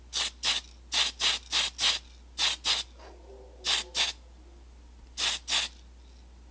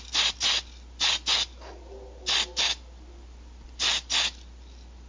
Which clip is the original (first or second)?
first